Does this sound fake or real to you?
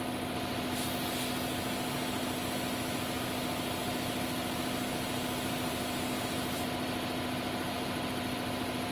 real